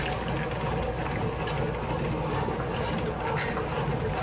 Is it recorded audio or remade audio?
recorded